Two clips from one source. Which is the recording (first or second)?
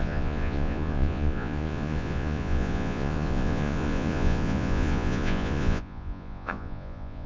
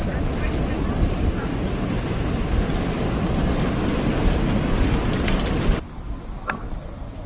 second